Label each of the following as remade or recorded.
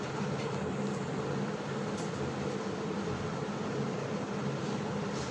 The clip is recorded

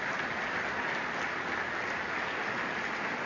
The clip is recorded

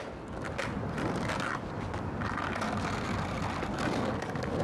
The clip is recorded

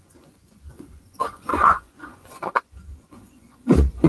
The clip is remade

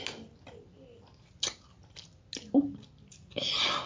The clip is recorded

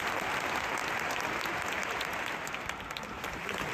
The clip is recorded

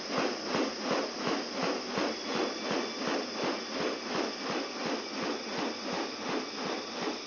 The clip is recorded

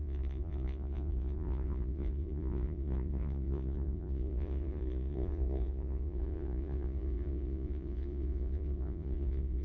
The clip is remade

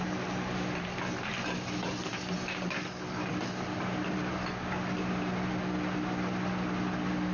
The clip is recorded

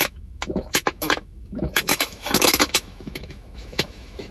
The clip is remade